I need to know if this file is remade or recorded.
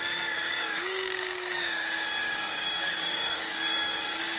remade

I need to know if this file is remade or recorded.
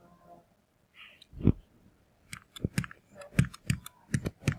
recorded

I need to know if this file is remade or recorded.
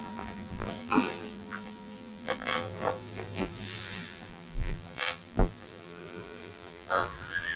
remade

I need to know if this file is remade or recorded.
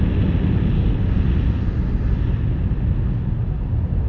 recorded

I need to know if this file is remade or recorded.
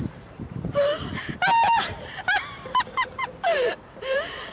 remade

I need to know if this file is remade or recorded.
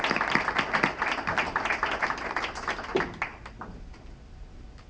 recorded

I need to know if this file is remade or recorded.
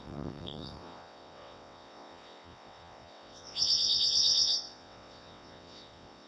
remade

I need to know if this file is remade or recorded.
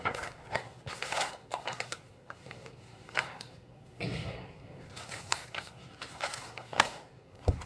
remade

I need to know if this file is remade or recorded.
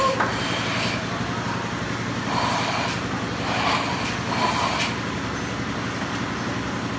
recorded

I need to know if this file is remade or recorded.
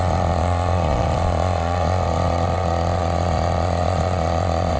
remade